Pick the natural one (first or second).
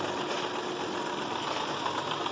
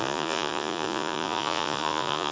first